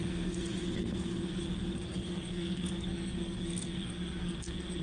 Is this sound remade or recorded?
remade